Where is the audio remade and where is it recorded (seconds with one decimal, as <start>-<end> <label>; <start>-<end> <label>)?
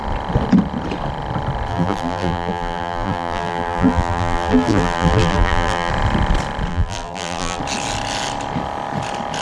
0.0-1.7 recorded; 1.7-5.9 remade; 5.9-6.7 recorded; 6.7-7.6 remade; 7.6-9.4 recorded